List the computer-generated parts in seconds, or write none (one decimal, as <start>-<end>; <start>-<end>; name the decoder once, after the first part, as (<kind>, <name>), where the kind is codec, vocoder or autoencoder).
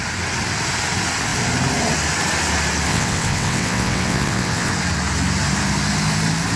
2.9-4.7 (vocoder, WaveNeXt)